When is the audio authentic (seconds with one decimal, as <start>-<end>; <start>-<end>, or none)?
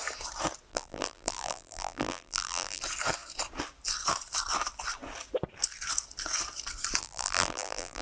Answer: 0.0-0.7; 2.8-7.0